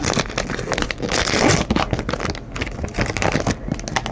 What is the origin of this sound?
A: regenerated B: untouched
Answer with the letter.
B